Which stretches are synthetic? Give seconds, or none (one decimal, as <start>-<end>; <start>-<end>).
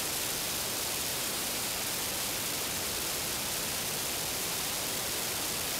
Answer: 1.1-1.7